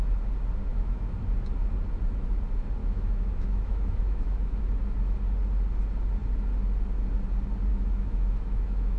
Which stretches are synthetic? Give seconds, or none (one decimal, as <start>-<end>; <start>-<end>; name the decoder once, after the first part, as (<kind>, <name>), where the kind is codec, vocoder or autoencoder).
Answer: 0.7-1.2 (autoencoder, DAC-VAE); 2.8-4.6; 7.7-9.0